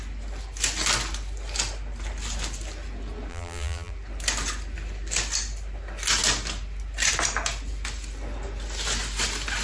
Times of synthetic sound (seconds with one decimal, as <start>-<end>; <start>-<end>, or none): 3.3-3.9